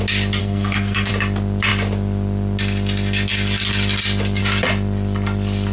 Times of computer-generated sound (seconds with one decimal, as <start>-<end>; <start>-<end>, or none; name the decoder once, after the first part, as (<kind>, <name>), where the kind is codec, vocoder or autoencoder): 0.4-1.1 (codec, SNAC)